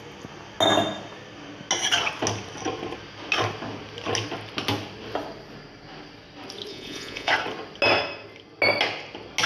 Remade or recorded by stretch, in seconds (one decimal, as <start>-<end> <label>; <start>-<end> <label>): 0.0-6.7 recorded; 6.7-7.3 remade; 7.3-9.5 recorded